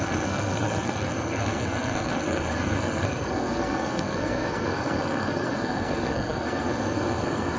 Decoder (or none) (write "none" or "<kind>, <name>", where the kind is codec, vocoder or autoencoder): codec, SNAC